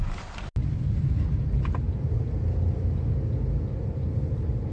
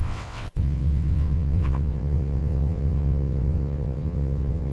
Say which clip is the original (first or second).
first